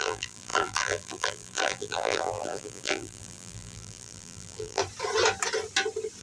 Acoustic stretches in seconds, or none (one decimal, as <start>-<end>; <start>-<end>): 4.8-6.2